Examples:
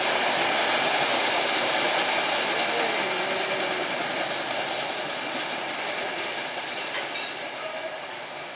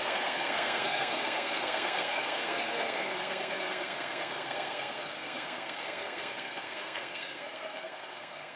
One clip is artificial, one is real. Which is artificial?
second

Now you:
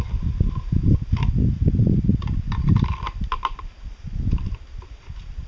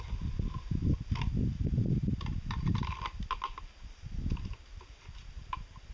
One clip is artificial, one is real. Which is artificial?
first